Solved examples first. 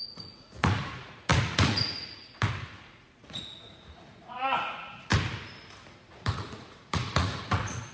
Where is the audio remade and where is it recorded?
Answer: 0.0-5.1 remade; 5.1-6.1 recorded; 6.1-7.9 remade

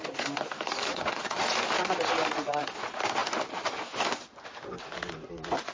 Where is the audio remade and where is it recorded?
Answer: 0.0-0.8 recorded; 0.8-1.5 remade; 1.5-5.7 recorded